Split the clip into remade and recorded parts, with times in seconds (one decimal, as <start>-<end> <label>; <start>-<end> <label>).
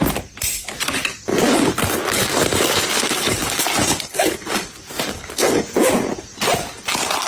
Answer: 0.0-1.3 recorded; 1.3-5.7 remade; 5.7-7.3 recorded